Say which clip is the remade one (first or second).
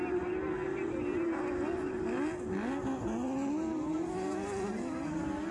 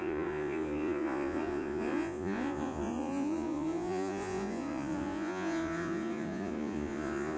second